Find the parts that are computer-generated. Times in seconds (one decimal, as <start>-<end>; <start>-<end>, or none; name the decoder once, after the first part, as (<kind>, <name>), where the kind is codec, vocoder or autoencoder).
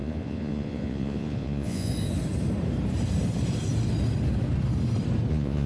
0.0-1.9 (vocoder, Vocos); 5.3-5.7